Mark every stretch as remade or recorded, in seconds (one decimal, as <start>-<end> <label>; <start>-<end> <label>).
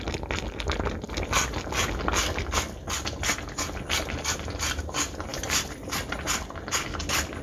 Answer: 0.0-7.4 recorded